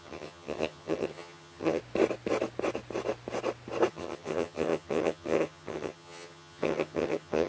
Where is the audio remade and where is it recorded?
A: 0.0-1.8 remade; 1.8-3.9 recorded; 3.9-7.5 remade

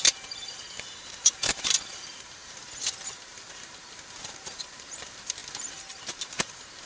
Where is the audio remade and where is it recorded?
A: 0.0-5.4 remade; 5.4-6.1 recorded; 6.1-6.8 remade

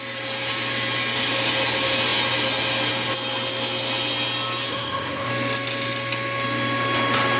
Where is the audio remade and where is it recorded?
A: 0.0-4.7 recorded; 4.7-5.3 remade; 5.3-7.4 recorded

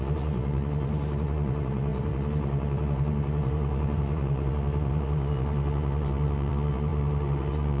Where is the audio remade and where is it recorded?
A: 0.0-7.8 remade

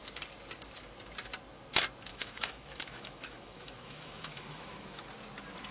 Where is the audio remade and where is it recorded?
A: 0.0-2.1 recorded; 2.1-5.0 remade; 5.0-5.7 recorded